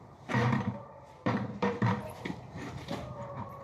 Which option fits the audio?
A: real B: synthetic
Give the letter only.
B